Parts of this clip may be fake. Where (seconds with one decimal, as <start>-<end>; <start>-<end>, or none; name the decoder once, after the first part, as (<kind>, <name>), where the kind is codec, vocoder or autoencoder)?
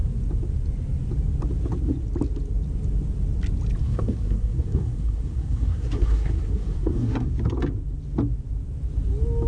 3.8-7.3 (codec, SNAC)